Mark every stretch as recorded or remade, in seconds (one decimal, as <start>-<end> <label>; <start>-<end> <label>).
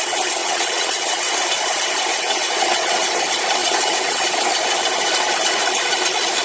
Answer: 0.0-0.4 recorded; 0.4-1.3 remade; 1.3-2.1 recorded; 2.1-3.2 remade; 3.2-3.6 recorded; 3.6-4.4 remade; 4.4-6.4 recorded